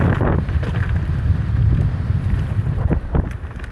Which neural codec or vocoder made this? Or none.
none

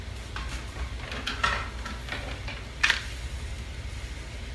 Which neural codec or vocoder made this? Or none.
none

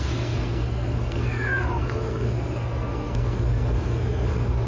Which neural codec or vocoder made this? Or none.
codec, SNAC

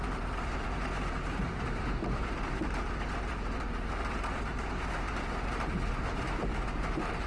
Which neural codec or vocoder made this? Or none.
vocoder, BigVGAN v2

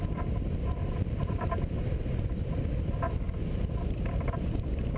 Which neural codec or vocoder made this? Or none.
none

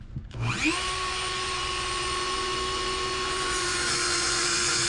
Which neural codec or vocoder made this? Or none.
vocoder, Vocos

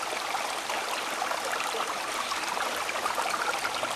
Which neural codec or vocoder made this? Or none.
none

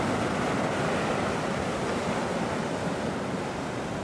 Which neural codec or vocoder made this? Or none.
none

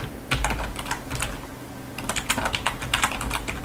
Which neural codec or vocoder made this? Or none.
none